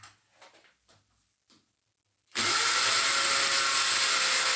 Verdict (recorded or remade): recorded